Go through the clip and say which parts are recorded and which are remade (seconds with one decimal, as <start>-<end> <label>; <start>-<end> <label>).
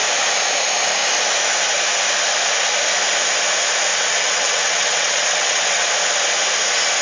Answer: 0.0-3.9 recorded; 3.9-5.9 remade; 5.9-7.0 recorded